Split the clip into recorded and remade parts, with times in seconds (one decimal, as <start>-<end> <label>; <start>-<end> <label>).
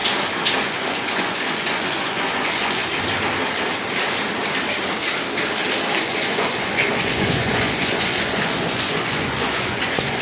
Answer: 0.0-0.6 recorded; 0.6-2.8 remade; 2.8-6.0 recorded; 6.0-10.2 remade